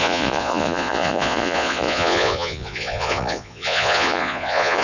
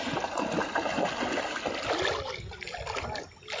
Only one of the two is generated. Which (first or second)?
first